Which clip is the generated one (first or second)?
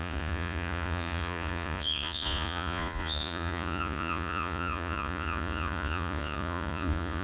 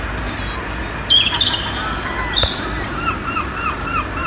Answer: first